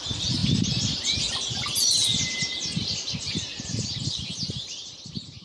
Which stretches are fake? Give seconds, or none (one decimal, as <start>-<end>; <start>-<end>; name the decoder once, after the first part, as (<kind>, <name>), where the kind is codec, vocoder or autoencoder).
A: 0.4-1.3 (vocoder, BigVGAN v2)

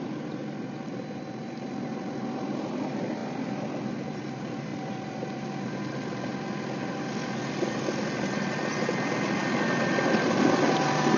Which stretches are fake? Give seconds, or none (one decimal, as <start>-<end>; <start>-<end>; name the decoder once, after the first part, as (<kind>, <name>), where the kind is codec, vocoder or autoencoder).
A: 0.0-3.2 (vocoder, BigVGAN v2); 3.9-4.7; 5.4-6.3; 7.1-11.2